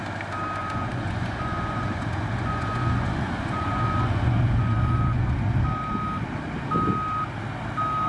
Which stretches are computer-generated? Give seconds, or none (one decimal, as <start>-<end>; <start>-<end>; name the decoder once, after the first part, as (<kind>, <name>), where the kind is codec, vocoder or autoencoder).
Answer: 0.6-5.5 (vocoder, Vocos)

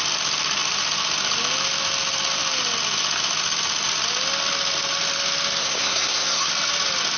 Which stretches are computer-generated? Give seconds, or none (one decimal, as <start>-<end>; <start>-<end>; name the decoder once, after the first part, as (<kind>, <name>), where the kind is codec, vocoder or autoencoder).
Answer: 5.6-6.5 (codec, SNAC)

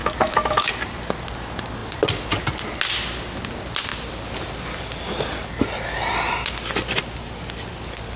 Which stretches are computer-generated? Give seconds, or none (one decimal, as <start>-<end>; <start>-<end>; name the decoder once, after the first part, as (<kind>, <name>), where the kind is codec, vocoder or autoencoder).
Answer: 0.0-0.7 (autoencoder, DAC-VAE)

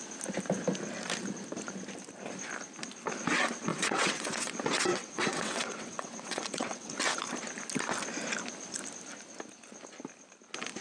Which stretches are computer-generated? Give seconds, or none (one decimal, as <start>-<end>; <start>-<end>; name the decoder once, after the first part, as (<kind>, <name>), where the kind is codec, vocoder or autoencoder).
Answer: 3.7-4.5 (vocoder, WaveNeXt); 4.9-6.9

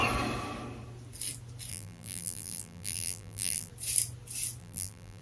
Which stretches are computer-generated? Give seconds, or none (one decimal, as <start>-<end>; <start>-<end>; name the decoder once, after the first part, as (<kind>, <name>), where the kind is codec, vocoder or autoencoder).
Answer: 1.7-3.7 (vocoder, BigVGAN v2); 4.6-5.2

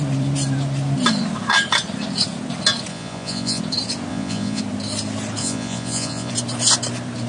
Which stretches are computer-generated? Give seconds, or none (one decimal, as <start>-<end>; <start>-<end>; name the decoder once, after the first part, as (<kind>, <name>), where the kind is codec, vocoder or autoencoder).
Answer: 2.9-3.6 (vocoder, Vocos); 4.1-4.6; 5.4-6.3

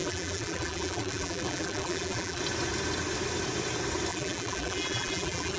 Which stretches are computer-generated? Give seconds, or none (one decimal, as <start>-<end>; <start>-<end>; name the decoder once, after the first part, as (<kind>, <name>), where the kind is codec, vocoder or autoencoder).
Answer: 0.0-2.4 (vocoder, BigVGAN v2); 4.1-5.6